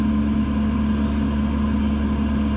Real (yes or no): yes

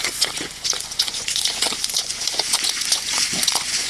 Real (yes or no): no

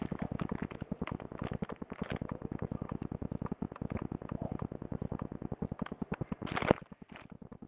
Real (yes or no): yes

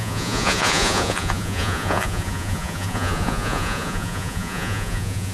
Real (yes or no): no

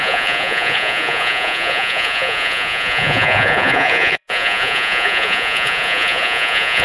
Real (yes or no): no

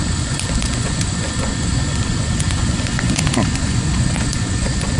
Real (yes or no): no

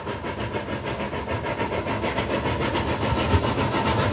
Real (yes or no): yes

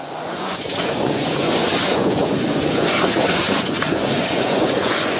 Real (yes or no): no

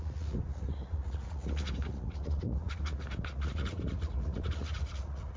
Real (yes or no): no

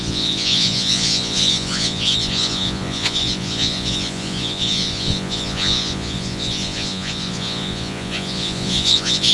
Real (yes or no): no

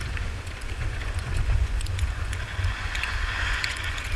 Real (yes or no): no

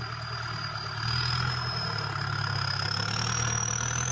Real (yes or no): yes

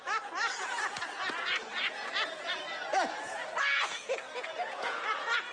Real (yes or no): no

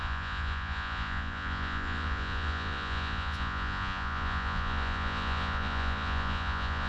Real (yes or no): no